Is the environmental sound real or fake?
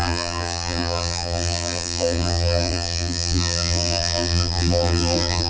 fake